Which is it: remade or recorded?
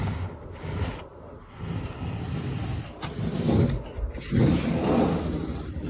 recorded